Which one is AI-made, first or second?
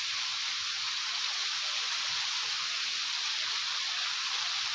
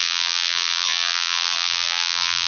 second